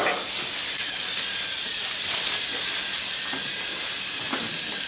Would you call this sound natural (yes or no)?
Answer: yes